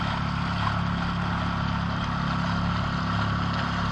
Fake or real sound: real